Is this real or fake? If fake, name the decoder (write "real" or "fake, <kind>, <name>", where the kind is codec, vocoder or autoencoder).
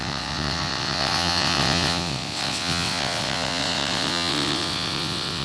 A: fake, vocoder, WaveNeXt